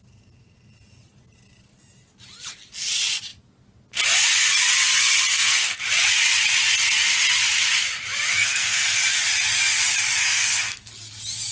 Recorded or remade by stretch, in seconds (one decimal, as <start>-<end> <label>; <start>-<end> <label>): 0.0-5.3 recorded; 5.3-5.8 remade; 5.8-8.3 recorded; 8.3-9.0 remade; 9.0-10.2 recorded; 10.2-10.9 remade; 10.9-11.5 recorded

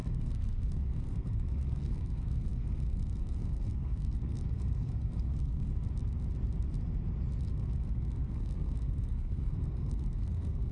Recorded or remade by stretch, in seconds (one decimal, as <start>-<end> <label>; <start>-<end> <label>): 0.0-5.7 remade; 5.7-7.5 recorded; 7.5-10.7 remade

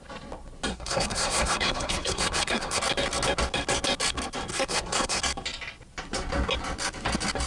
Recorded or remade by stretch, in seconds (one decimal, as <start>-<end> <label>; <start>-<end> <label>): 0.0-0.7 recorded; 0.7-2.8 remade; 2.8-4.5 recorded; 4.5-5.2 remade; 5.2-7.5 recorded

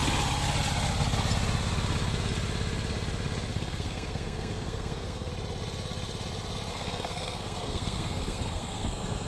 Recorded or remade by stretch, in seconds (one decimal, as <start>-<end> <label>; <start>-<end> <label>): 0.0-3.5 recorded; 3.5-5.3 remade; 5.3-6.7 recorded; 6.7-9.3 remade

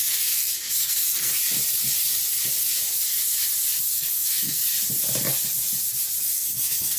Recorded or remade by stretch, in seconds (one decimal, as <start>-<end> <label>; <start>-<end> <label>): 0.0-1.3 remade; 1.3-3.8 recorded; 3.8-4.6 remade; 4.6-6.2 recorded; 6.2-7.0 remade